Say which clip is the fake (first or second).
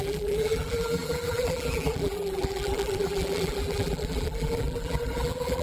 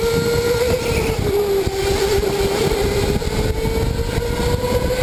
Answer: first